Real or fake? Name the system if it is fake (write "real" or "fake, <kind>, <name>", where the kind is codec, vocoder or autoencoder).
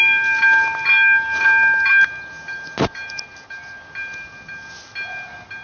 real